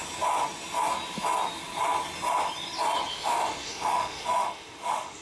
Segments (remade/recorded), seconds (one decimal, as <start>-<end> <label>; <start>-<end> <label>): 0.0-3.1 recorded; 3.1-5.2 remade